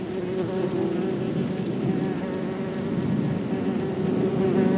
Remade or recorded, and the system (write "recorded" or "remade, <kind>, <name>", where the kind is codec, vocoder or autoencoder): recorded